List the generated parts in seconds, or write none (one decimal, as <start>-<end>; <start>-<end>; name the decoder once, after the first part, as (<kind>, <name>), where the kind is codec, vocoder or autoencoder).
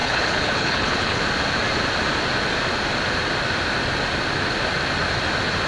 0.0-1.2 (codec, HILCodec)